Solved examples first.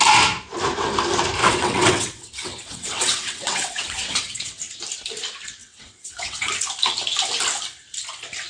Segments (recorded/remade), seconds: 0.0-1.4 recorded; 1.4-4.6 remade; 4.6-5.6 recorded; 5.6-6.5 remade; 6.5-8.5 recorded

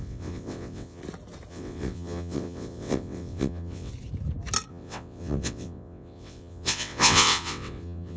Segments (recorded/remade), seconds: 0.0-1.0 remade; 1.0-1.5 recorded; 1.5-3.9 remade; 3.9-4.7 recorded; 4.7-8.2 remade

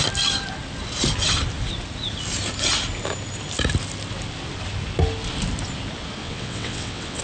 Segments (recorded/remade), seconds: 0.0-6.2 recorded; 6.2-7.2 remade